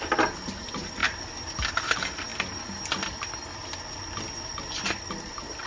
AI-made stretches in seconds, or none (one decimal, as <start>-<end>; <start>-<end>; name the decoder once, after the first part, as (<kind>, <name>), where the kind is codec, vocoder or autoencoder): none